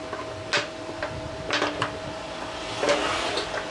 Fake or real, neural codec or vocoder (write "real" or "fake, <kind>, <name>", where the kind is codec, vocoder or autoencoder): real